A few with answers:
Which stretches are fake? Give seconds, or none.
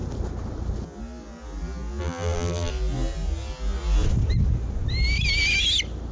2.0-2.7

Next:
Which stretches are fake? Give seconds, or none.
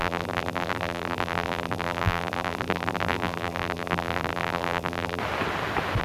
0.0-5.2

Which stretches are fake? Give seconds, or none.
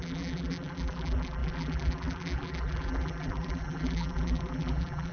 0.0-5.1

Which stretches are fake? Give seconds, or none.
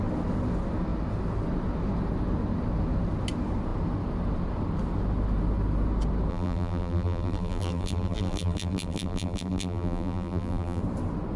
6.3-10.8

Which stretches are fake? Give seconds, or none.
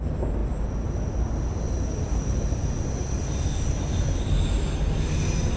none